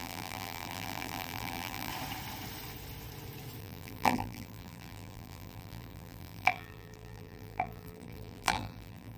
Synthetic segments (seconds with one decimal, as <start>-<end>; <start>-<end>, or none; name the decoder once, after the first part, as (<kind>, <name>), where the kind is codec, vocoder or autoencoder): 0.0-1.9 (vocoder, BigVGAN v2); 3.6-9.2